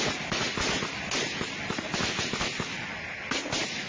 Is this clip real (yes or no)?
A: yes